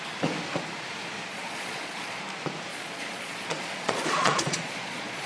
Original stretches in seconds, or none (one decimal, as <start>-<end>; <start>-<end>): 0.0-1.3; 2.2-2.7